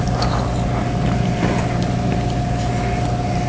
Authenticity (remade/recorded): recorded